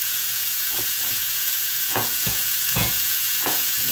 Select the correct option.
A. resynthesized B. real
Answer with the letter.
A